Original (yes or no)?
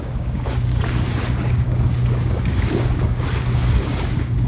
no